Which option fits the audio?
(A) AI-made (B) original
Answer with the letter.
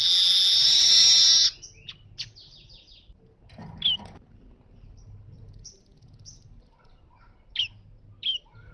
B